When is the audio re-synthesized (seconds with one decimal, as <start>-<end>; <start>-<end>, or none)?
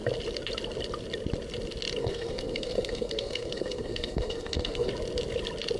2.0-4.9